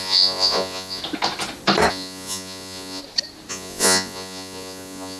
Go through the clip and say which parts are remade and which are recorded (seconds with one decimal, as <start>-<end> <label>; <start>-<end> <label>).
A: 0.0-1.0 remade; 1.0-1.9 recorded; 1.9-3.0 remade; 3.0-3.5 recorded; 3.5-5.2 remade